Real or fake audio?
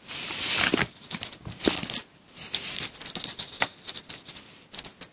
real